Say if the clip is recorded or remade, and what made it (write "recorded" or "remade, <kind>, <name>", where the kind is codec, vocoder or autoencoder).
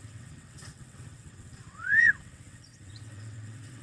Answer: remade, vocoder, WaveNeXt